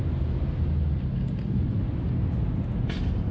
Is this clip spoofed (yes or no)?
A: no